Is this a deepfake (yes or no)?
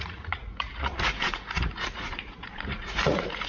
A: yes